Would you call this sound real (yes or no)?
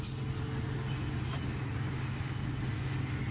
yes